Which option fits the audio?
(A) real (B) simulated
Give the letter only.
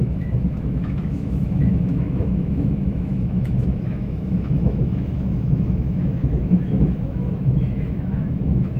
B